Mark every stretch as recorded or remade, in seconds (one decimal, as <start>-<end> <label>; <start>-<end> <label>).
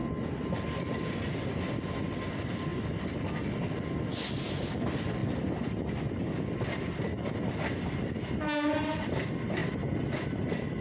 0.0-10.8 recorded